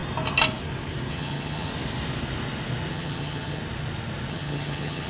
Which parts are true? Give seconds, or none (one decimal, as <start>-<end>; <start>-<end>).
0.0-1.1; 1.7-2.9; 3.6-4.3